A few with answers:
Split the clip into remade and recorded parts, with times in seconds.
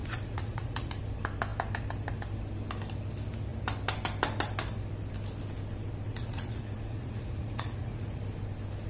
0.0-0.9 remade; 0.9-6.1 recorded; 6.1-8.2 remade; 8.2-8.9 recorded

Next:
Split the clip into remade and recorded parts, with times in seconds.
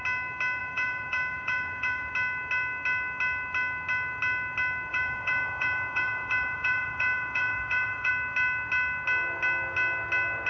0.0-0.6 recorded; 0.6-2.1 remade; 2.1-4.9 recorded; 4.9-8.1 remade; 8.1-10.5 recorded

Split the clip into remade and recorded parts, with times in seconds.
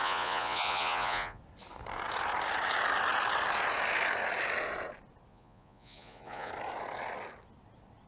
0.0-1.4 remade; 1.4-5.3 recorded; 5.3-6.5 remade; 6.5-8.1 recorded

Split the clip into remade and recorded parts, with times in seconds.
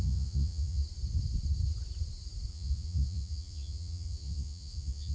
0.0-0.8 remade; 0.8-2.5 recorded; 2.5-5.1 remade